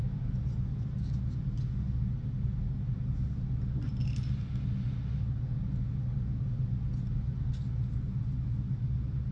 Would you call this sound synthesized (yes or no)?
no